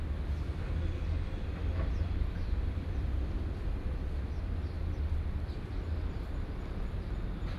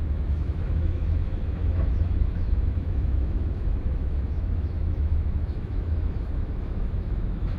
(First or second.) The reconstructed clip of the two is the second